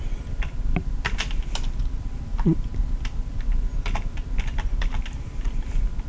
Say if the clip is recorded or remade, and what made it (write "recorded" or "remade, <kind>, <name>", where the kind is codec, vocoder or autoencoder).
recorded